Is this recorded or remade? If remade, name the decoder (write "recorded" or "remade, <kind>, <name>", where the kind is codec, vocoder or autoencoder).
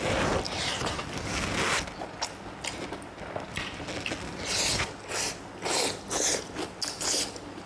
recorded